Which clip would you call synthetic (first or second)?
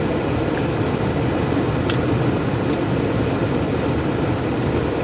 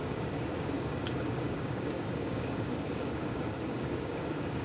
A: second